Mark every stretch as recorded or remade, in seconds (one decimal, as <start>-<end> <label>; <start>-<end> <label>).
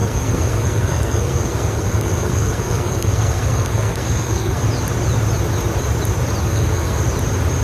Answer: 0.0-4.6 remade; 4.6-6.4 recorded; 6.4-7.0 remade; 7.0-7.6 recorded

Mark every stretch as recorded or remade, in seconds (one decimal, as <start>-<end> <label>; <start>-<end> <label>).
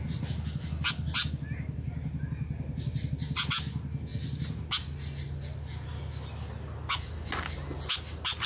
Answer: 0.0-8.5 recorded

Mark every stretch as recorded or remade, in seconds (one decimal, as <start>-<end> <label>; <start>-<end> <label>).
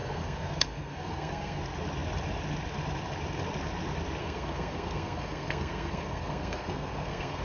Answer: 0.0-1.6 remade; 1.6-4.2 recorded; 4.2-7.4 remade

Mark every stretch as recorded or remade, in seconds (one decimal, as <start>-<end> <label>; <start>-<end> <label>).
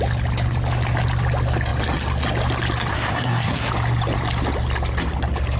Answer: 0.0-2.9 recorded; 2.9-3.7 remade; 3.7-5.6 recorded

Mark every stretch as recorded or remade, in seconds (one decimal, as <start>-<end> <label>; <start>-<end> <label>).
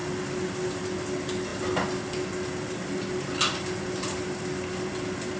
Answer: 0.0-5.4 recorded